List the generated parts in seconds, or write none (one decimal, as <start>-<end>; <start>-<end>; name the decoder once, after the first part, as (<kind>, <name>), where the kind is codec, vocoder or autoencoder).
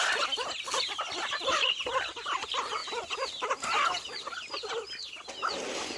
none